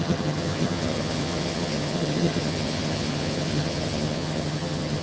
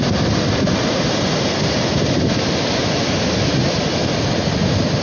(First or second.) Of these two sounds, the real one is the second